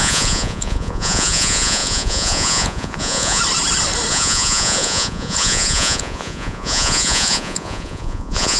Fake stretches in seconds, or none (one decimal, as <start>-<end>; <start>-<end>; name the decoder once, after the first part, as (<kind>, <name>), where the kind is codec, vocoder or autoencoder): 0.0-3.4 (vocoder, Vocos); 4.1-8.6